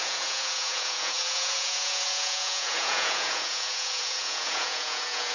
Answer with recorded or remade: remade